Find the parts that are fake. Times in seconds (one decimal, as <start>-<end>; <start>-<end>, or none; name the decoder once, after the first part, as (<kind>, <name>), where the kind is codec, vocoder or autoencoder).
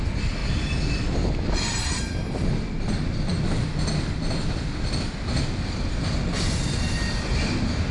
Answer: 0.4-2.9 (vocoder, BigVGAN v2)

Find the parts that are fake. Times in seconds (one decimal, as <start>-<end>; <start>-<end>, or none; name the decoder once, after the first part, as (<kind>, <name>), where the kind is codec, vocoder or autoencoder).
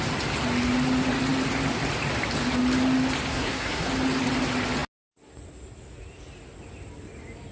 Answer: 3.3-3.9 (codec, SNAC)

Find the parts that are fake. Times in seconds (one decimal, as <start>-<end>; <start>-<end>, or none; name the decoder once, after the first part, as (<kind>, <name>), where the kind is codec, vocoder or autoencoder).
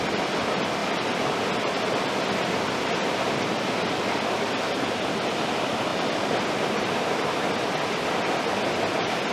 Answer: none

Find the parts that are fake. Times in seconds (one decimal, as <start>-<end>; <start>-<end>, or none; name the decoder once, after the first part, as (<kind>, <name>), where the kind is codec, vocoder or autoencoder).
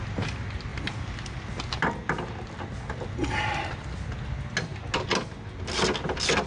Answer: none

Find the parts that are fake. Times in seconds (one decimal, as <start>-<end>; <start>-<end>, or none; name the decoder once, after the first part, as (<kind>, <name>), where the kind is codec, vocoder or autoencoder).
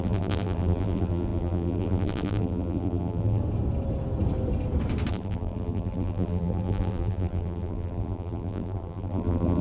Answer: 0.0-3.4 (vocoder, BigVGAN v2); 5.1-9.6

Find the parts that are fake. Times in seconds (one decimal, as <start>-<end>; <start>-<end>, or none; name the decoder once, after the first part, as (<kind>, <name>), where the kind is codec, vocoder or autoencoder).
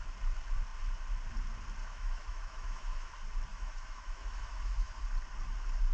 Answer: 1.8-3.1 (autoencoder, DAC-VAE); 3.5-5.0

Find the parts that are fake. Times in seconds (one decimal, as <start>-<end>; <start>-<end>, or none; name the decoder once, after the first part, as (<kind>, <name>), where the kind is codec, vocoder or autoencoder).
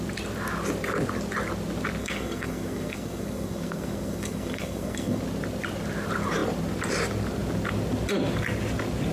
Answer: 2.0-5.2 (codec, SNAC)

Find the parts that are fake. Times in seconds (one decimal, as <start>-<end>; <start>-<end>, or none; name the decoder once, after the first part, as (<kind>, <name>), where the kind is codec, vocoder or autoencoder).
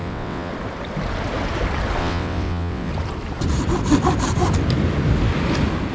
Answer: 0.0-0.5 (vocoder, WaveNeXt); 2.0-2.9